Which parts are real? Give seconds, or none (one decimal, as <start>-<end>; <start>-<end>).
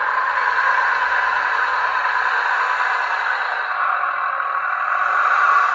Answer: 1.9-5.3